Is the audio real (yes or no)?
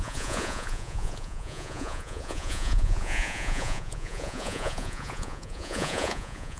no